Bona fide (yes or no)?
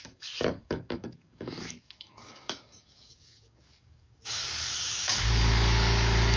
no